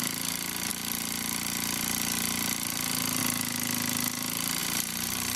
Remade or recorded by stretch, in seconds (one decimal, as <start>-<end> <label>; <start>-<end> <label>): 0.0-4.6 recorded; 4.6-5.4 remade